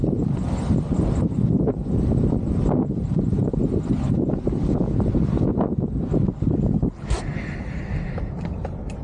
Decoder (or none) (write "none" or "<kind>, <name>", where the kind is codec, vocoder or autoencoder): none